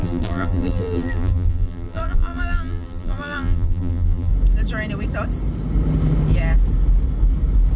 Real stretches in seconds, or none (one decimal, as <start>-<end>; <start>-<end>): 4.3-7.8